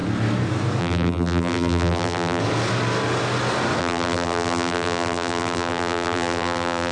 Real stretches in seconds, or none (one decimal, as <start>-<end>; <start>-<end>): 0.0-0.8; 2.4-3.8